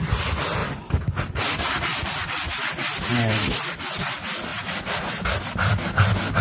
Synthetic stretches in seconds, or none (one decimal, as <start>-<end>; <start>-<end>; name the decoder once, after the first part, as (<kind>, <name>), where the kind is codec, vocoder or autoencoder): none

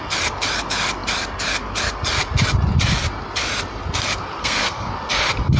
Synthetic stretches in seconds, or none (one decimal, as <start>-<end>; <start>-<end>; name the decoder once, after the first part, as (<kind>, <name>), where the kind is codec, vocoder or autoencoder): 4.4-4.9 (codec, SNAC)

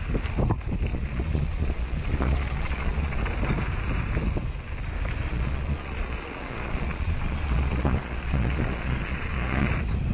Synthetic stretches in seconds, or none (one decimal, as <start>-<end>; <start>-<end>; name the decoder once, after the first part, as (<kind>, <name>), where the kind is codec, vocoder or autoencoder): 0.9-3.2 (vocoder, Vocos); 5.3-9.7

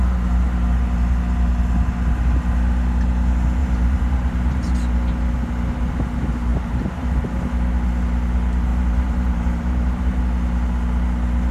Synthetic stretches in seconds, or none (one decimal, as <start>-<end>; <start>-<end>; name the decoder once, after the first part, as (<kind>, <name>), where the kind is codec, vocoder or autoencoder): 3.6-4.7 (vocoder, BigVGAN v2); 6.5-7.2; 8.7-10.2

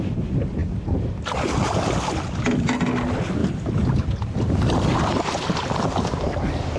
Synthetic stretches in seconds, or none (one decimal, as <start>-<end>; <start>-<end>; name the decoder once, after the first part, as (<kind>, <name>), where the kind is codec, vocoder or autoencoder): none

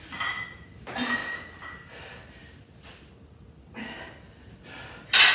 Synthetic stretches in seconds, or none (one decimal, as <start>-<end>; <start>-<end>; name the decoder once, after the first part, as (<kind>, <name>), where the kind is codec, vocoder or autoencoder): none

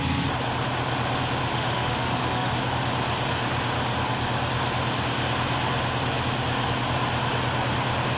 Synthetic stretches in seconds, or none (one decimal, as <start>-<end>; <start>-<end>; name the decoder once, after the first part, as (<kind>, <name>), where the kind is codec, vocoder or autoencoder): 1.5-2.5 (autoencoder, DAC-VAE)

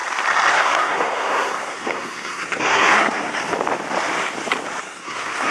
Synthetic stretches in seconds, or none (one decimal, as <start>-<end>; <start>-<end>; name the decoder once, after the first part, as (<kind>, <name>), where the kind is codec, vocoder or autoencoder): 0.5-3.4 (codec, SNAC); 4.8-5.5